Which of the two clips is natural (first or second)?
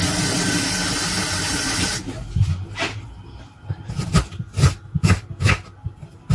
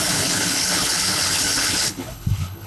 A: first